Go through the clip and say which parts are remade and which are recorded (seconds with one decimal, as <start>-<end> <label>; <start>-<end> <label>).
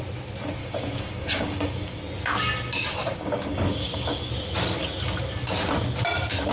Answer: 0.0-0.6 recorded; 0.6-2.0 remade; 2.0-2.9 recorded; 2.9-4.3 remade; 4.3-6.5 recorded